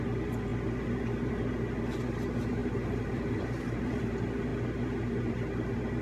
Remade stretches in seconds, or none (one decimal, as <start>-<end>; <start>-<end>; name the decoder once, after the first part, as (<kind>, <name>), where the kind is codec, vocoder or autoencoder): 2.6-4.1 (vocoder, BigVGAN v2)